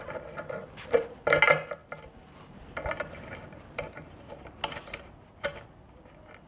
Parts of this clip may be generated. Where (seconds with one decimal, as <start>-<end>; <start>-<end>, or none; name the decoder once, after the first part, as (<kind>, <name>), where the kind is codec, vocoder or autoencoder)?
none